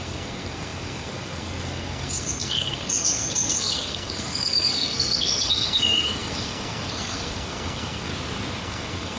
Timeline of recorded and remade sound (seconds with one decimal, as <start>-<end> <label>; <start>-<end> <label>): 0.0-8.1 remade; 8.1-8.6 recorded; 8.6-9.2 remade

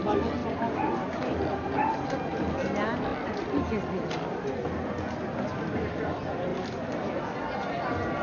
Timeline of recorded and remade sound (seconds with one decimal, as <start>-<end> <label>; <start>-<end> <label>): 0.0-0.4 recorded; 0.4-2.4 remade; 2.4-3.1 recorded; 3.1-3.6 remade; 3.6-6.5 recorded; 6.5-7.0 remade; 7.0-8.2 recorded

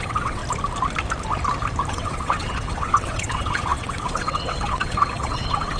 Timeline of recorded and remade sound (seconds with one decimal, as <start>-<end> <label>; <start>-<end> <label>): 0.0-0.4 remade; 0.4-1.9 recorded; 1.9-5.8 remade

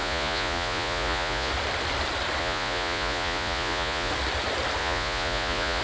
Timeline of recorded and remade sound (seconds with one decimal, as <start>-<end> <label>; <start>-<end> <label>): 0.0-1.5 remade; 1.5-2.4 recorded; 2.4-4.1 remade; 4.1-4.8 recorded; 4.8-5.8 remade

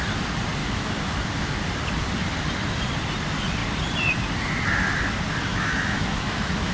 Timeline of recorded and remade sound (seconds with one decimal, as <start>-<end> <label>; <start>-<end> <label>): 0.0-0.6 recorded; 0.6-1.6 remade; 1.6-5.5 recorded; 5.5-6.7 remade

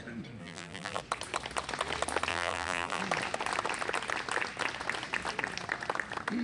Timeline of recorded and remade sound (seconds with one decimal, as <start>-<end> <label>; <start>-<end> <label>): 0.0-0.4 recorded; 0.4-1.0 remade; 1.0-2.3 recorded; 2.3-3.0 remade; 3.0-6.4 recorded